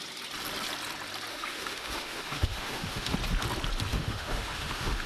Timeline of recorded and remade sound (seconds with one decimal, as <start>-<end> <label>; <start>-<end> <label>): 0.0-1.3 recorded; 1.3-3.1 remade; 3.1-3.9 recorded; 3.9-5.1 remade